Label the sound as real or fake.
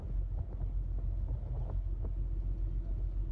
real